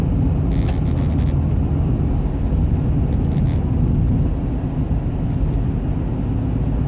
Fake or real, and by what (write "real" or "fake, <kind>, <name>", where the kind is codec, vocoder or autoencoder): real